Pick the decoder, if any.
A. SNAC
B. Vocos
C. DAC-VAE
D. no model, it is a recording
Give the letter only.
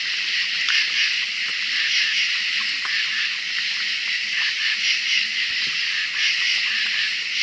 D